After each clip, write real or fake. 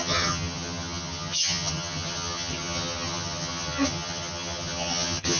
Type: fake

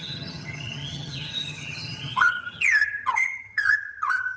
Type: fake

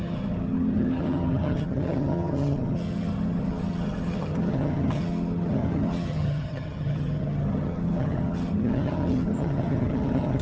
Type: fake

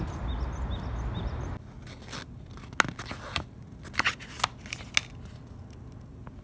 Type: real